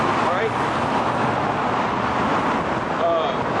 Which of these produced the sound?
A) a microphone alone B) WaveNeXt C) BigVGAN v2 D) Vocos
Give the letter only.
A